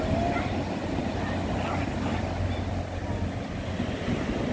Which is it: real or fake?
real